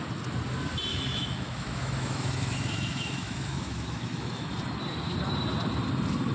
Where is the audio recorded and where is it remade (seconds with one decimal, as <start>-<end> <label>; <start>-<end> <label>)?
0.0-0.9 recorded; 0.9-4.5 remade; 4.5-6.3 recorded